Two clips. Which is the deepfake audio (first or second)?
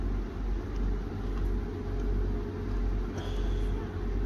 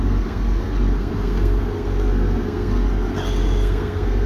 second